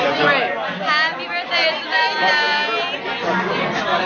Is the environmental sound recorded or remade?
recorded